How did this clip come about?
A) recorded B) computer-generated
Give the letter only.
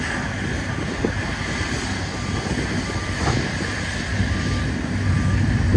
A